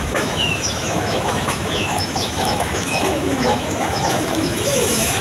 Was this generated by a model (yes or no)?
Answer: yes